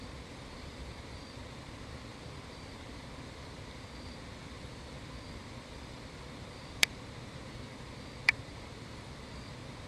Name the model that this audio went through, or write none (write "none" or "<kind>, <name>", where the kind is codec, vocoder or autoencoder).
vocoder, BigVGAN v2